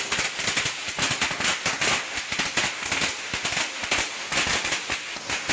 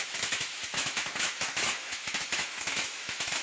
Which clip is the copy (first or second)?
second